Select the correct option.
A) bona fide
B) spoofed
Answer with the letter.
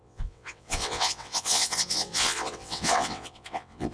B